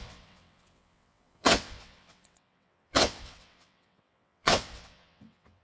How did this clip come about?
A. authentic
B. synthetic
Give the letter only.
B